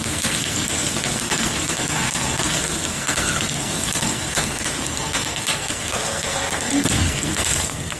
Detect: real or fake fake